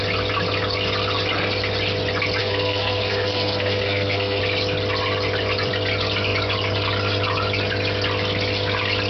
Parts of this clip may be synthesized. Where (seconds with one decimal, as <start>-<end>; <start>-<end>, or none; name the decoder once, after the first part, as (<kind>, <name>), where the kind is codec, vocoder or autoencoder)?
2.4-4.4 (codec, SNAC)